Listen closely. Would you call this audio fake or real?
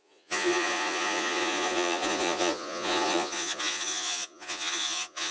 fake